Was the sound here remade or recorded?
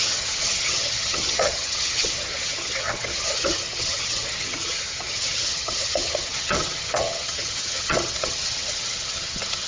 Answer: remade